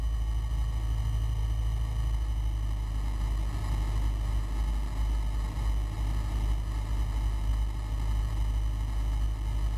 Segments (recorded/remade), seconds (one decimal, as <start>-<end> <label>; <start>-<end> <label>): 0.0-9.8 recorded